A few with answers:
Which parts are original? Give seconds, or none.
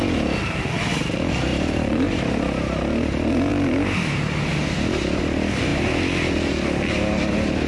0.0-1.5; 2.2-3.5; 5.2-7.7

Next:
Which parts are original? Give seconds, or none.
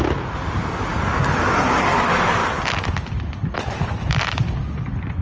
0.0-5.2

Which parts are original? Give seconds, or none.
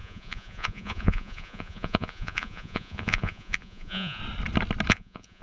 4.2-4.9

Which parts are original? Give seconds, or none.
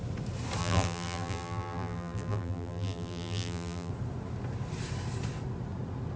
0.0-0.6; 3.9-6.2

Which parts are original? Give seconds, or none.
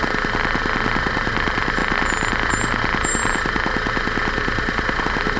0.0-5.4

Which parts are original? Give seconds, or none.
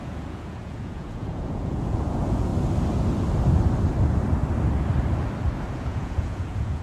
2.5-5.7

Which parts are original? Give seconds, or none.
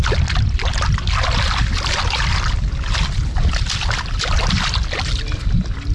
0.0-5.9